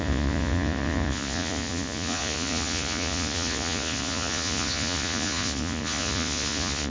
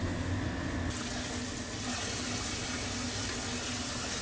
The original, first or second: second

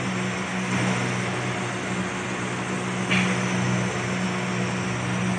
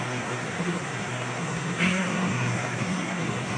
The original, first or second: first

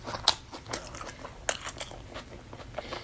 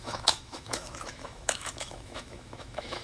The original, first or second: first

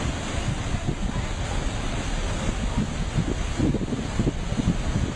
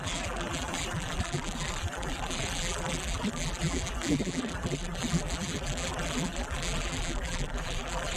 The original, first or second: first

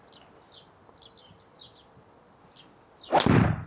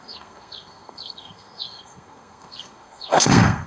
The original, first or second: first